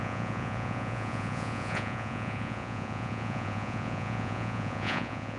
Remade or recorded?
remade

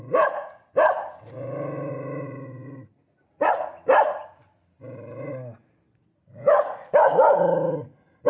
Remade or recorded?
recorded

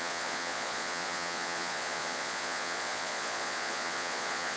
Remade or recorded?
remade